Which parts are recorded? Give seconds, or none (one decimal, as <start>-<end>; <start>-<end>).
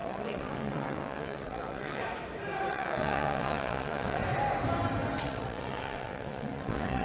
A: 2.0-2.7; 4.2-5.2